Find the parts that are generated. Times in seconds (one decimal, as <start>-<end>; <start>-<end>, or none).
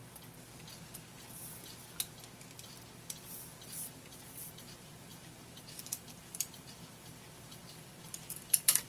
3.8-8.9